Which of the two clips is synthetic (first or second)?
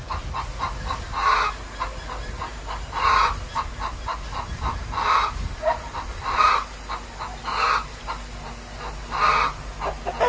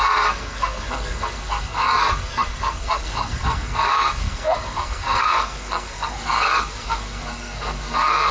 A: second